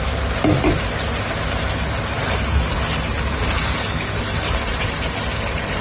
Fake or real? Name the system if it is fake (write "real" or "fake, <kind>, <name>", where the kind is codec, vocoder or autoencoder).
real